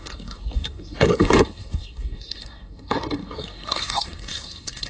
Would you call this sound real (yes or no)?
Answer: no